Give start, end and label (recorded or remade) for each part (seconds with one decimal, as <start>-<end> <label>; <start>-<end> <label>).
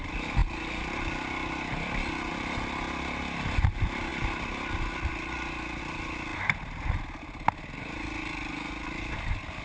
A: 0.0-9.6 recorded